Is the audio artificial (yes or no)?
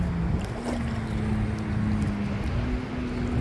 no